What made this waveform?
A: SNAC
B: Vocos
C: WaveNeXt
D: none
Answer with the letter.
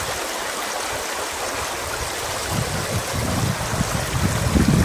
D